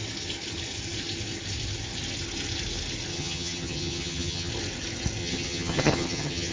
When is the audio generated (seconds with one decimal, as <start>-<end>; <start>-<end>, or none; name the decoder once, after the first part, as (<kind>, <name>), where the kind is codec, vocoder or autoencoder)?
3.1-4.5 (vocoder, HiFi-GAN); 5.2-6.5